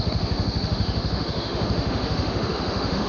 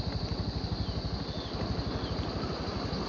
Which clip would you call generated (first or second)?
first